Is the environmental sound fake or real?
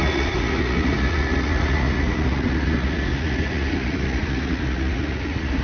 fake